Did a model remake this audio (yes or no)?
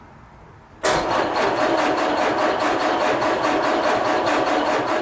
no